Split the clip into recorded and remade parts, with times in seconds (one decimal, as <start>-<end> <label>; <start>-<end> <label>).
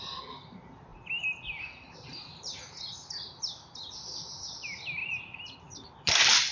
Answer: 0.0-6.5 recorded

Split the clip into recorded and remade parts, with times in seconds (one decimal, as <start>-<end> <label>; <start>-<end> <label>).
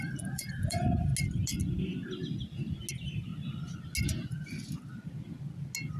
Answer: 0.0-1.1 remade; 1.1-2.9 recorded; 2.9-3.3 remade; 3.3-4.0 recorded; 4.0-4.9 remade; 4.9-6.0 recorded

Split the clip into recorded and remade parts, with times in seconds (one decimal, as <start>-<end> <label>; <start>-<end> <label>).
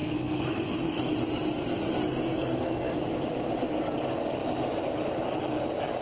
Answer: 0.0-1.1 remade; 1.1-2.0 recorded; 2.0-2.9 remade; 2.9-6.0 recorded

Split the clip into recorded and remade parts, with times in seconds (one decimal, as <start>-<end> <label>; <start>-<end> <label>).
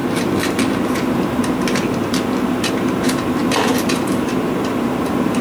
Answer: 0.0-2.7 recorded; 2.7-3.4 remade; 3.4-3.9 recorded; 3.9-4.3 remade; 4.3-5.0 recorded; 5.0-5.4 remade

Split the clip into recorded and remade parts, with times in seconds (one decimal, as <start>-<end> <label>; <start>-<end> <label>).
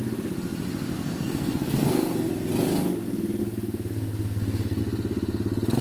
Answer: 0.0-0.9 recorded; 0.9-2.3 remade; 2.3-3.4 recorded; 3.4-4.8 remade; 4.8-5.8 recorded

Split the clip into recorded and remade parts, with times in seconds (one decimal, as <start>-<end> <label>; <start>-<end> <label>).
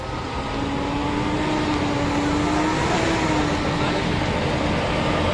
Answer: 0.0-5.3 recorded